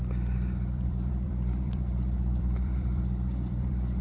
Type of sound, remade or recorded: remade